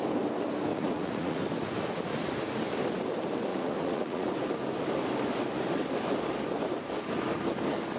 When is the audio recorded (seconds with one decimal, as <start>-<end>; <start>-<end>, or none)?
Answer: 0.0-0.7; 1.4-3.5; 4.3-8.0